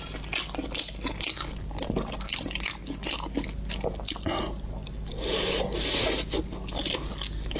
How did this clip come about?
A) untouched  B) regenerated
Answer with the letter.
A